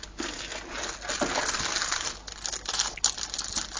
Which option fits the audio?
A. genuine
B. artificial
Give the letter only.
A